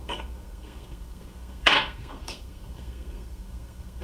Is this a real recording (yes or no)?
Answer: no